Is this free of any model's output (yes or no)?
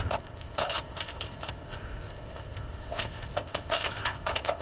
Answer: no